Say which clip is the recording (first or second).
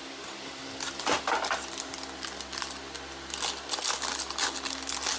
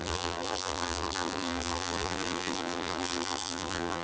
first